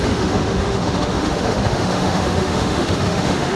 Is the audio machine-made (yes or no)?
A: yes